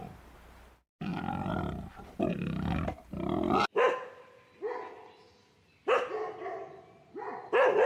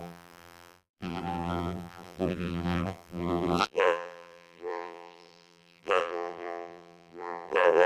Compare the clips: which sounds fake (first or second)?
second